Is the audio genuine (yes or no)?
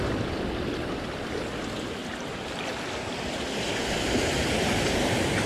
yes